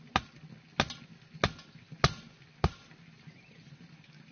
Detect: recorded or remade recorded